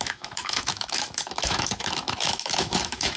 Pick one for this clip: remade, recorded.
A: remade